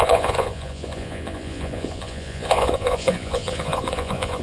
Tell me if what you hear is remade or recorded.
remade